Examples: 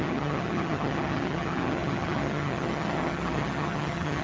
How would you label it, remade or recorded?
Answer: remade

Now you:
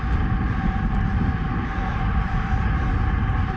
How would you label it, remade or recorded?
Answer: recorded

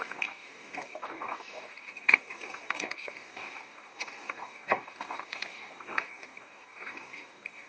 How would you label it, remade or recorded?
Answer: remade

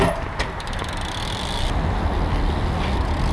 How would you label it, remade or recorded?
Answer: recorded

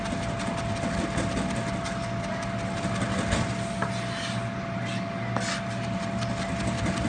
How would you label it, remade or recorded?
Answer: recorded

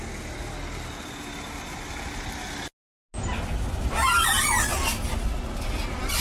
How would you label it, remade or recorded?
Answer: recorded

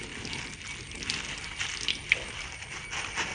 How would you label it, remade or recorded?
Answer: recorded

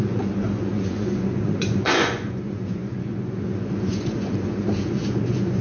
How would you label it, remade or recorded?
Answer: remade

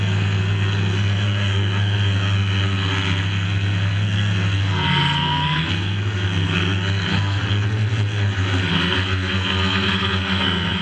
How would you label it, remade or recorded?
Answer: remade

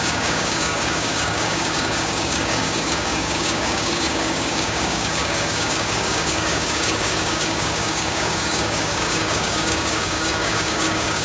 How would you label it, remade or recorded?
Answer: remade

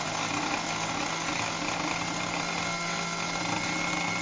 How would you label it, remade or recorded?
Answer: recorded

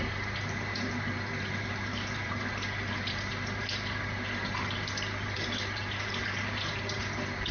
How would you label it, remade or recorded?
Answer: remade